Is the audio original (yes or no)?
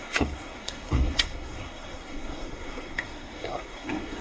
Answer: no